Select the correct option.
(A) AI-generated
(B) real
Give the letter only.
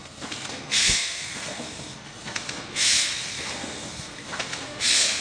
A